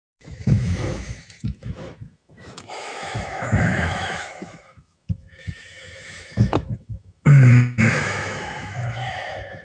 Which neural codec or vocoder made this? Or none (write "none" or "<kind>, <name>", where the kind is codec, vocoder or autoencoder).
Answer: autoencoder, DAC-VAE